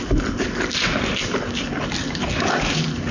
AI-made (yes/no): no